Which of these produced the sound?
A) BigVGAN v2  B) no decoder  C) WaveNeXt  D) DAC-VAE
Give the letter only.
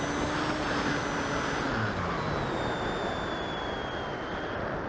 B